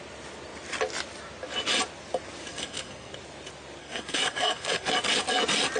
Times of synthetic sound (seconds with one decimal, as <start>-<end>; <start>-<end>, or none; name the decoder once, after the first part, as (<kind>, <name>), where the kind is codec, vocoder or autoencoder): 2.5-3.1 (codec, SNAC); 3.8-4.9